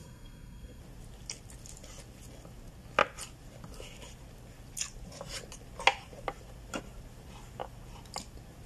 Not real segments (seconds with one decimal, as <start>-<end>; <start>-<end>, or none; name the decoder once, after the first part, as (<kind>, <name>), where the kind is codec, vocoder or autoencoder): 0.0-0.8 (codec, SNAC)